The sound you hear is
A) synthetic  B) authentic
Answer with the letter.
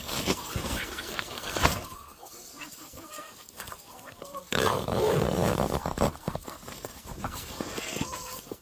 A